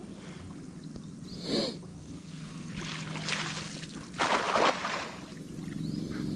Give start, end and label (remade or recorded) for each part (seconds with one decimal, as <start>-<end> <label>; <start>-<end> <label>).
0.0-1.9 recorded; 1.9-2.7 remade; 2.7-6.4 recorded